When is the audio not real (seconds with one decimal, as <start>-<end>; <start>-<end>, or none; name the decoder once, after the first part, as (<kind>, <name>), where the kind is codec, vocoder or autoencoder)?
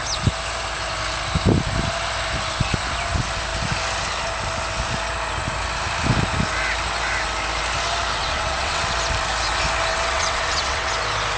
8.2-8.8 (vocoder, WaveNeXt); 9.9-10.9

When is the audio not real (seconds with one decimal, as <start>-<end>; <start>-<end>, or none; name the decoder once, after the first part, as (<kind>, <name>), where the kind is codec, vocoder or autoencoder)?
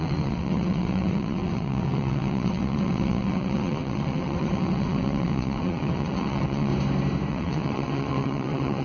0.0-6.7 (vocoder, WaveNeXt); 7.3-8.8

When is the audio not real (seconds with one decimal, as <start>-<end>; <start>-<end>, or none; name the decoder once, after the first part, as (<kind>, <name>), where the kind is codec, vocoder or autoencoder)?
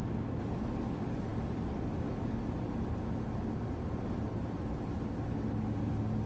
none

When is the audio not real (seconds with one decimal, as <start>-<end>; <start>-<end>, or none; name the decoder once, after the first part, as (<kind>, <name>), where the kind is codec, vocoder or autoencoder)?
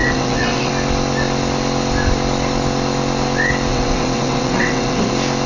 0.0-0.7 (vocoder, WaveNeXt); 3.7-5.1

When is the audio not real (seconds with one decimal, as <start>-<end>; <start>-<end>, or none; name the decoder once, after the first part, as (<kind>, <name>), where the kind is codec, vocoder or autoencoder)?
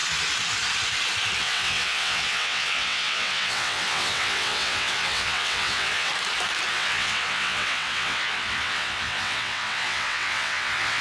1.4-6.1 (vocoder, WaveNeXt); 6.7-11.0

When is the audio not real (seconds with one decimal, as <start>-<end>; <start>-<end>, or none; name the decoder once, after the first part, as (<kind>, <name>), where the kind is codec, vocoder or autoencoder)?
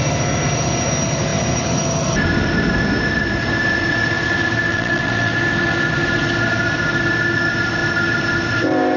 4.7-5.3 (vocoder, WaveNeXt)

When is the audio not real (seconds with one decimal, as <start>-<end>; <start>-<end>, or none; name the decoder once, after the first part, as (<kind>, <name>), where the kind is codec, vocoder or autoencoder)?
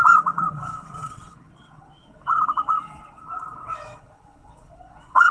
0.0-5.3 (vocoder, WaveNeXt)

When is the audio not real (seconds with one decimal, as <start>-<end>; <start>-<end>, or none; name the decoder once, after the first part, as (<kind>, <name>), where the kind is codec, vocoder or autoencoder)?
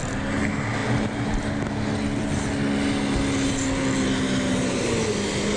none